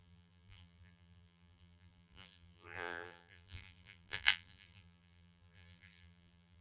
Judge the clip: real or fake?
fake